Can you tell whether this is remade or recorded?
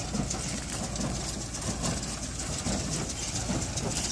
recorded